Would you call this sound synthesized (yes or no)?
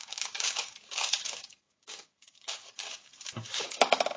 yes